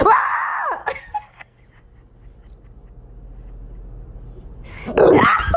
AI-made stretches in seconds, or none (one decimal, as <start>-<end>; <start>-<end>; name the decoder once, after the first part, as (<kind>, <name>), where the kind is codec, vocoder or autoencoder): 0.8-1.6 (codec, SNAC)